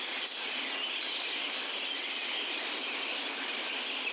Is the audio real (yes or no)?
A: yes